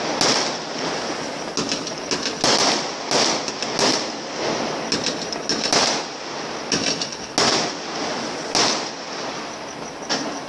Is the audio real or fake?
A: real